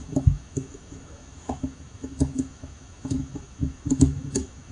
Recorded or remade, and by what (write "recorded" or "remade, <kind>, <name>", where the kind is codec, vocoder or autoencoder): remade, autoencoder, DAC-VAE